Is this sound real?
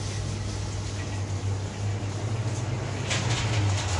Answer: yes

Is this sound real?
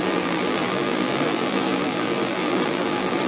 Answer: no